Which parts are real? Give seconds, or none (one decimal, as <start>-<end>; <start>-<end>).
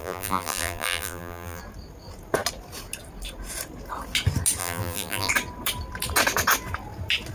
1.6-4.6; 5.3-7.3